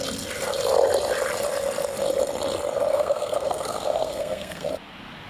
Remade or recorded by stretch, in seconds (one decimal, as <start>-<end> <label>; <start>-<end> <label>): 0.0-2.9 recorded; 2.9-4.7 remade; 4.7-5.3 recorded